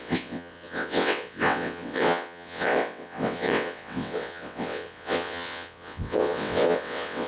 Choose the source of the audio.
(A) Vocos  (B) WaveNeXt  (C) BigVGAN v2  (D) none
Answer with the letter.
B